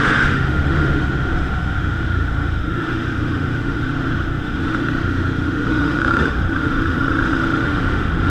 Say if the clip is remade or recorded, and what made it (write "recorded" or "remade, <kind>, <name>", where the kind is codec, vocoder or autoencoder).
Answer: remade, autoencoder, DAC-VAE